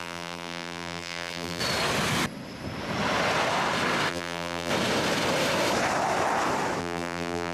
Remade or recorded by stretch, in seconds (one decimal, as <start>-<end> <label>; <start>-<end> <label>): 0.0-1.6 remade; 1.6-4.1 recorded; 4.1-4.7 remade; 4.7-6.8 recorded; 6.8-7.5 remade